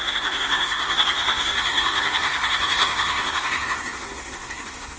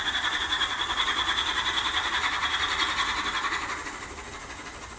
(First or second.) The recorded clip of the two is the second